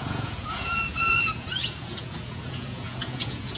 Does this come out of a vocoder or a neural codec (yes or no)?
yes